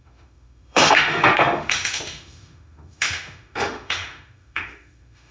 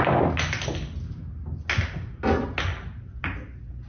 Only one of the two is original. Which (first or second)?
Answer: second